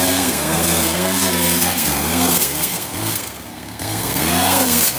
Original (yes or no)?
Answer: no